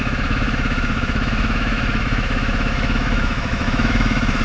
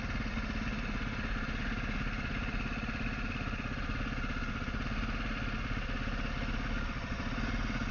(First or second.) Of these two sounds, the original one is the second